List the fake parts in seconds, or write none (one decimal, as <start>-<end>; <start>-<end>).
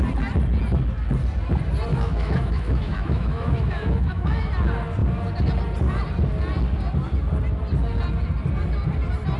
1.9-4.5